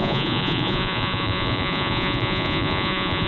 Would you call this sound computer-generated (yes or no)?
yes